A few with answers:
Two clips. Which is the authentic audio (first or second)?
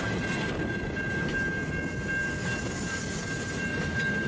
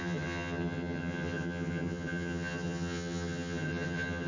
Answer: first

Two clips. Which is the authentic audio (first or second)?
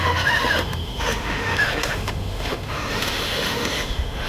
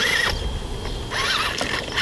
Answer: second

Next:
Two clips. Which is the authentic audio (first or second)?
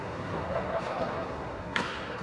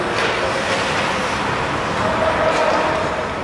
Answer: second